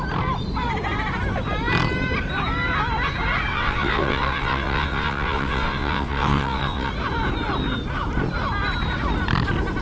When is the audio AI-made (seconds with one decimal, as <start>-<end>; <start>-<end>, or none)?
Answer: 3.5-6.9